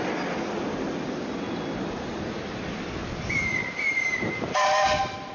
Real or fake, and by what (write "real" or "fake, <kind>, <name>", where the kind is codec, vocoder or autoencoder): real